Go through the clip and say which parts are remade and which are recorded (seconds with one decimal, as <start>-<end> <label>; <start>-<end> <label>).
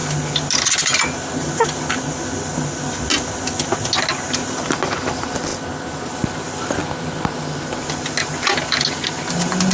0.0-9.7 recorded